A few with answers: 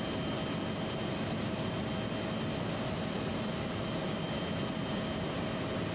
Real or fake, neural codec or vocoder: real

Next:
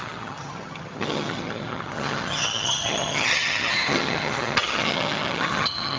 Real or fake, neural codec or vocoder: fake, vocoder, HiFi-GAN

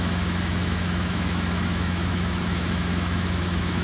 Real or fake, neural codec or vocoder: fake, autoencoder, DAC-VAE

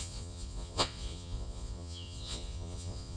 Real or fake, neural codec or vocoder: fake, vocoder, Vocos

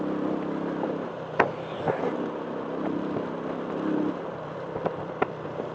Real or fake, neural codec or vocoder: fake, vocoder, BigVGAN v2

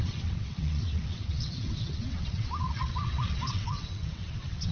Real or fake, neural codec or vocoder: fake, vocoder, WaveNeXt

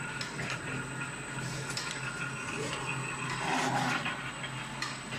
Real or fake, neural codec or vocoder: real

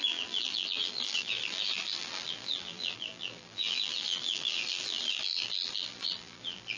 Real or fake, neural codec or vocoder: fake, vocoder, BigVGAN v2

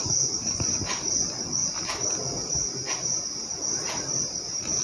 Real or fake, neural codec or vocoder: real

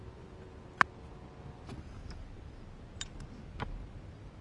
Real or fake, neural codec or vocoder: real